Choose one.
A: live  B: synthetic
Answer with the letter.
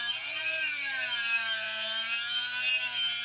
B